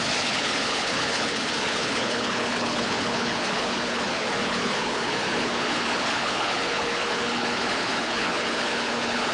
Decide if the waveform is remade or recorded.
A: remade